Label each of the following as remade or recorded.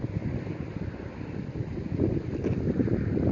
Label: recorded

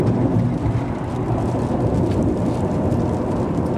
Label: recorded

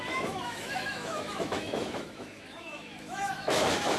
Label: remade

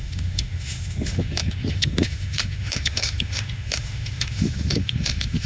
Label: remade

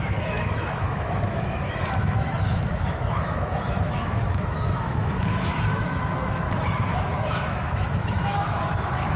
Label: remade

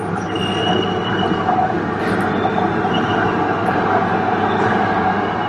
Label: recorded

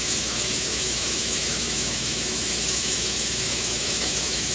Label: remade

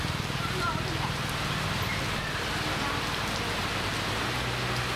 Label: recorded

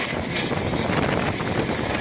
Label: recorded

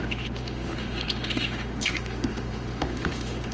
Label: remade